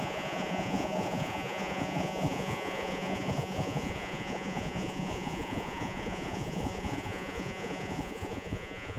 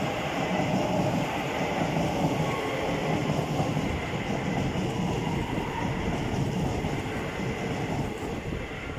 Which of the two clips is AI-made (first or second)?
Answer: first